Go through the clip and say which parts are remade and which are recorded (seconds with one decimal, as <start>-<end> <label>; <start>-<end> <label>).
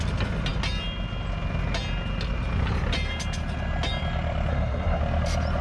0.0-4.5 recorded; 4.5-5.0 remade; 5.0-5.6 recorded